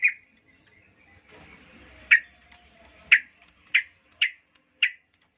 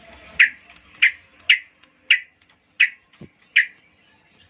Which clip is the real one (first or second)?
second